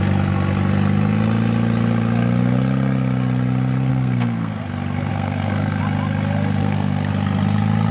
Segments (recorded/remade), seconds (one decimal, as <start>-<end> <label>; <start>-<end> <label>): 0.0-3.9 recorded; 3.9-4.6 remade; 4.6-5.1 recorded; 5.1-5.8 remade; 5.8-6.6 recorded; 6.6-7.1 remade; 7.1-7.9 recorded